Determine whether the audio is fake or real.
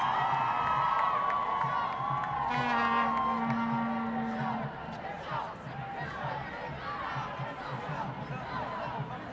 real